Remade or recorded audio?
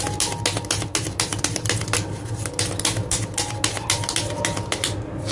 recorded